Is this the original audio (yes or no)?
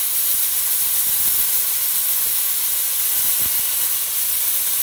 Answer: yes